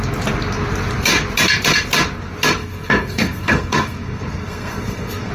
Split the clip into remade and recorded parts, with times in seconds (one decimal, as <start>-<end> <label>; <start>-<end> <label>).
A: 0.0-2.6 recorded; 2.6-5.3 remade